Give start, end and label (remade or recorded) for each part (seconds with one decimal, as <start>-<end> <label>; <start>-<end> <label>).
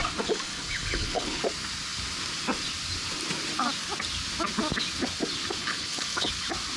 0.0-0.5 recorded; 0.5-1.4 remade; 1.4-5.6 recorded; 5.6-6.3 remade; 6.3-6.8 recorded